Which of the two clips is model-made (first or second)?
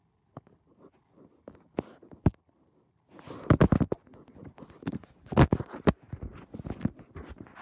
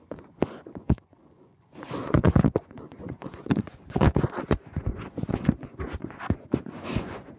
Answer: second